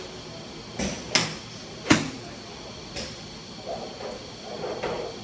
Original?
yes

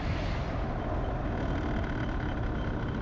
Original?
yes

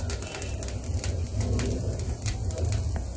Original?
yes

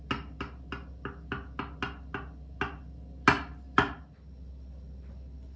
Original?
yes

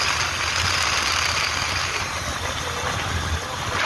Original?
yes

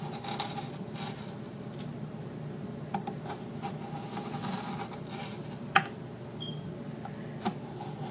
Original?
yes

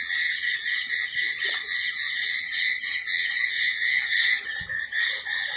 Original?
no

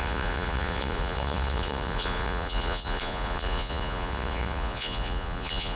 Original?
no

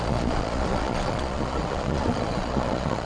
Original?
no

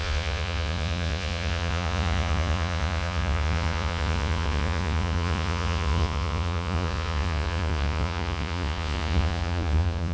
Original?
no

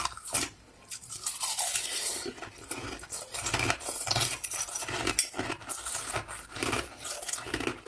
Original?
yes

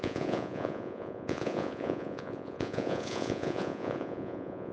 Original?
no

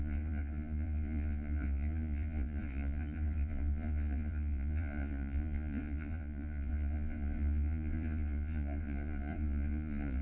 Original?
no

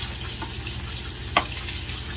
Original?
yes